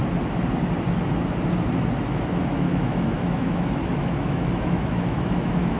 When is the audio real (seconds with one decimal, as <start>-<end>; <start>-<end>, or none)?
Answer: 0.0-2.4